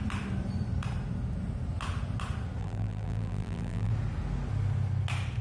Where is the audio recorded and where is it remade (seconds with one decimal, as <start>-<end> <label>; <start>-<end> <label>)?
0.0-2.6 recorded; 2.6-3.9 remade; 3.9-5.4 recorded